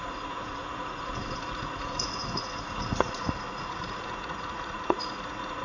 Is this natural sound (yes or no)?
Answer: no